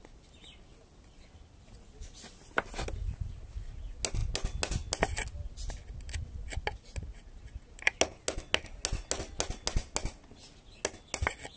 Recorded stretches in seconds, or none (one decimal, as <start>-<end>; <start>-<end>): 0.0-11.6

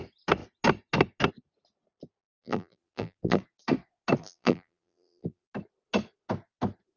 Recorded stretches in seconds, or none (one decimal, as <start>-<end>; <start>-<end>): 0.0-2.4; 3.4-4.2; 5.5-7.0

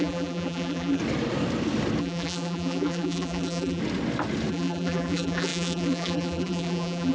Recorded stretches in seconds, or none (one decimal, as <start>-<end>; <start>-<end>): 1.0-2.0; 3.8-4.5

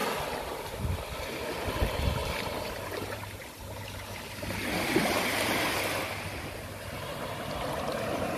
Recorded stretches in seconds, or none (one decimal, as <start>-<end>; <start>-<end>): 0.0-2.2; 5.7-8.4

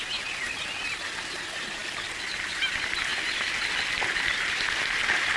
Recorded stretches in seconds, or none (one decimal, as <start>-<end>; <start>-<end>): 0.0-3.1

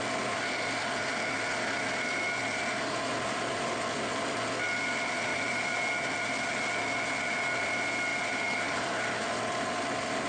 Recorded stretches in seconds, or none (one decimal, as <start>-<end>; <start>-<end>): 0.0-5.3; 5.8-8.1; 8.9-10.3